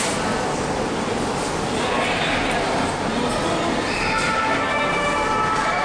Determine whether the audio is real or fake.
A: real